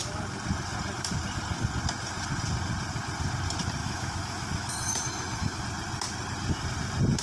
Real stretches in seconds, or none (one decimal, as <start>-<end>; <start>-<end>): 0.0-3.8; 5.6-7.2